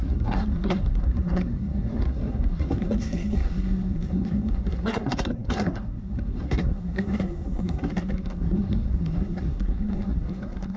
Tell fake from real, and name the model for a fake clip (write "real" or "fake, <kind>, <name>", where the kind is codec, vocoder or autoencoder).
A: fake, codec, SNAC